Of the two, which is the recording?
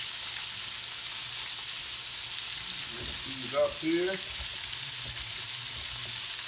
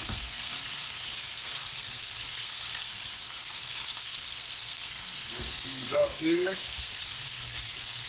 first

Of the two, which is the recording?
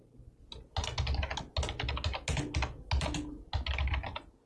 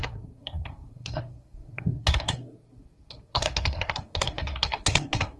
first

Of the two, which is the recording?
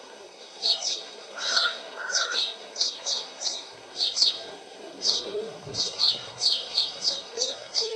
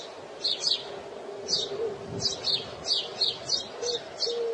second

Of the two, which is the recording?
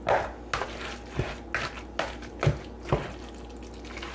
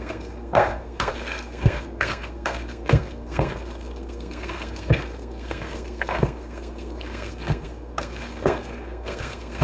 first